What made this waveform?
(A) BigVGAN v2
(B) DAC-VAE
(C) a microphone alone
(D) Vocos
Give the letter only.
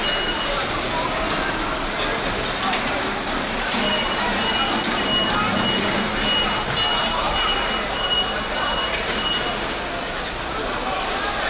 C